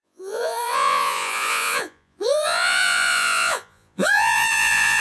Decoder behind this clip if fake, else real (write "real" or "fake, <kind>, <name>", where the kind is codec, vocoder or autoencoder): fake, vocoder, Vocos